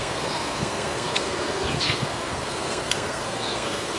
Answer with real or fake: fake